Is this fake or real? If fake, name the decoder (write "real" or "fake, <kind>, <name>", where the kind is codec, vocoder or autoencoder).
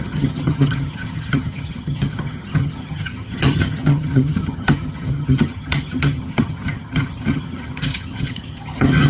fake, vocoder, HiFi-GAN